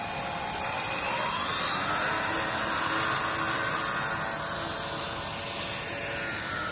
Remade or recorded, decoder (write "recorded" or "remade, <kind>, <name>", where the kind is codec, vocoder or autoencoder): recorded